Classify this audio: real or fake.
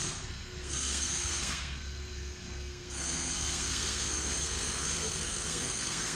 fake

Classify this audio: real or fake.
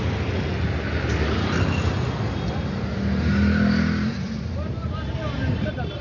real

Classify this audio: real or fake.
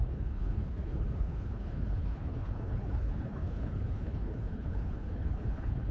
fake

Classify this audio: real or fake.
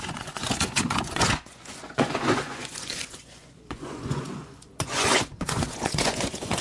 fake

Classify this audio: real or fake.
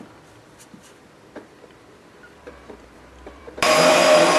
fake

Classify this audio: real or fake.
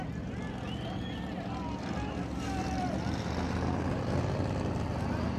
real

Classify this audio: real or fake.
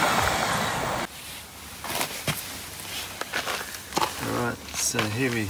real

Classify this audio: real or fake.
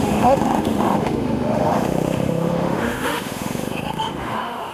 fake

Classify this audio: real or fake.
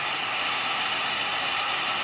real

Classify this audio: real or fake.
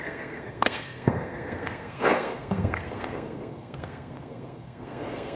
fake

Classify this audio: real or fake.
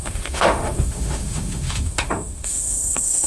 fake